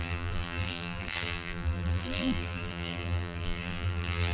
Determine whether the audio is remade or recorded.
remade